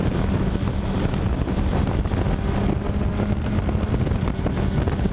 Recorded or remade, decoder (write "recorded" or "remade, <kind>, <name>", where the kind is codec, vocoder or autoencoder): recorded